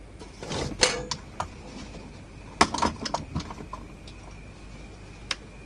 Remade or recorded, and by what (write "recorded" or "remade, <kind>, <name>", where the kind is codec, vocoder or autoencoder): recorded